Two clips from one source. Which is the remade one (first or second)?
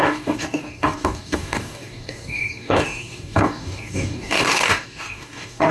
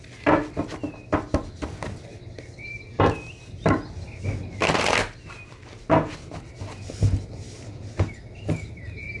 first